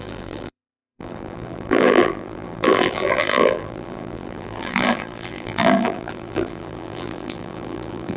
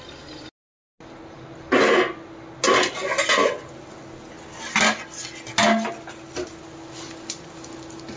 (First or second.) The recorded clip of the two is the second